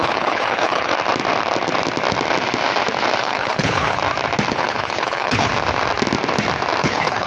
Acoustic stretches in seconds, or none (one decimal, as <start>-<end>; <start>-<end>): 0.9-3.2; 4.0-4.5; 5.5-6.8